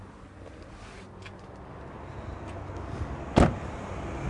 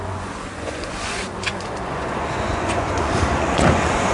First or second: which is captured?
first